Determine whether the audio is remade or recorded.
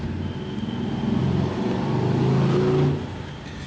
recorded